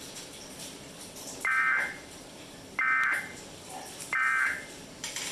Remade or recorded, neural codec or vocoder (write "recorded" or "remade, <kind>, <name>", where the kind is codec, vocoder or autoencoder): remade, vocoder, BigVGAN v2